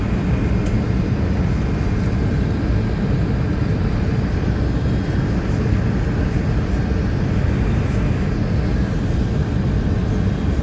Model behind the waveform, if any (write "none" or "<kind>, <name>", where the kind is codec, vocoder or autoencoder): none